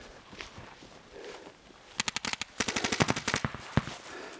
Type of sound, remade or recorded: recorded